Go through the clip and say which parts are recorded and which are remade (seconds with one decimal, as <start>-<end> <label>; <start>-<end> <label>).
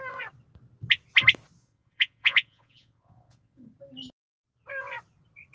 0.0-1.6 recorded; 1.6-3.7 remade; 3.7-5.5 recorded